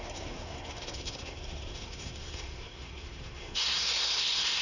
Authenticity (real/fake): fake